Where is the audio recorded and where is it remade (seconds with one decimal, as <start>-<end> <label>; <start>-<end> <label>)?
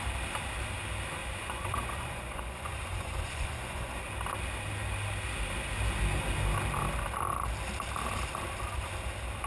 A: 0.0-1.2 recorded; 1.2-4.0 remade; 4.0-9.5 recorded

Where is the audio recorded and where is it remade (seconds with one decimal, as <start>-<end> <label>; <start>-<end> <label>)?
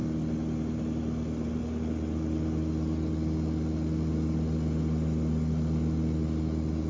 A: 0.0-6.9 recorded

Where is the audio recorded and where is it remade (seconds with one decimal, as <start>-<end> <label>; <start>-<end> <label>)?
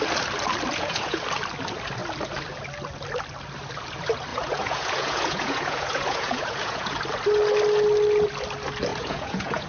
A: 0.0-0.7 recorded; 0.7-1.2 remade; 1.2-4.3 recorded; 4.3-7.0 remade; 7.0-8.9 recorded; 8.9-9.7 remade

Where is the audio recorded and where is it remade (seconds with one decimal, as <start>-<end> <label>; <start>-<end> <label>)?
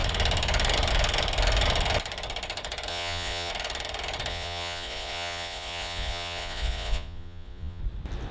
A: 0.0-2.9 recorded; 2.9-3.5 remade; 3.5-4.3 recorded; 4.3-7.8 remade; 7.8-8.3 recorded